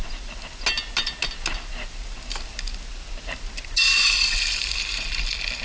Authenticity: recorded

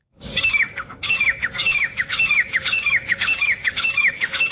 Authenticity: remade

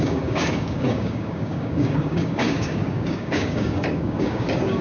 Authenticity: remade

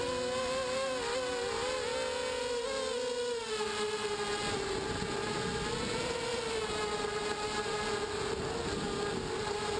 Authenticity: recorded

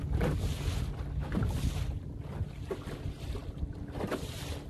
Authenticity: recorded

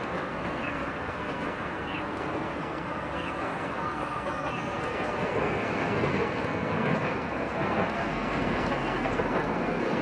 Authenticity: remade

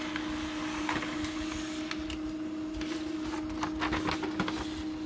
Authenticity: recorded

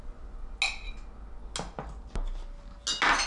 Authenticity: recorded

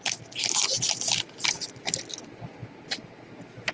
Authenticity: recorded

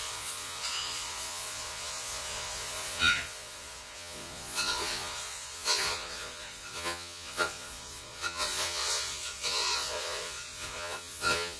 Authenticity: remade